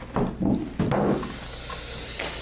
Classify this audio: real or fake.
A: real